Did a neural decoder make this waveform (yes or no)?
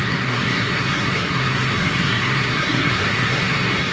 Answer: yes